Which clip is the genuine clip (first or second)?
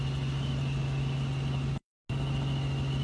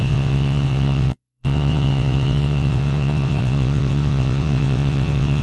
first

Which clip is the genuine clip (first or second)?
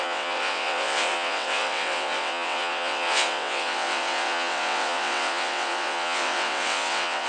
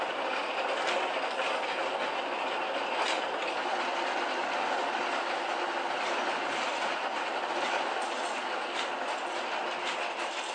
second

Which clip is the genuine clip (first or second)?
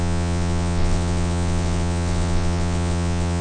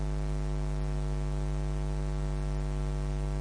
second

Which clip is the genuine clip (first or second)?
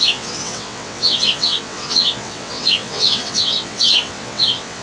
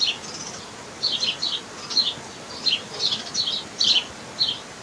second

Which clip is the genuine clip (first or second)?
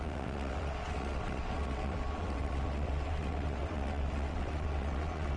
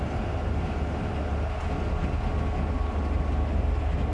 second